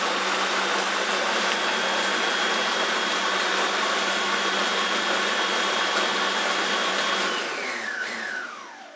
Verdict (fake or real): real